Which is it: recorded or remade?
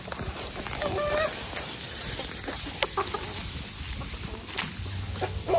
recorded